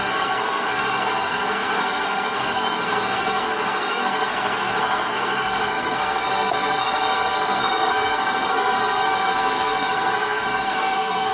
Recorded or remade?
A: remade